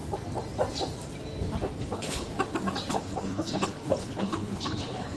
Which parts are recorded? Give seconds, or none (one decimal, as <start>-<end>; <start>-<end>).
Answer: 0.0-1.8; 2.3-2.9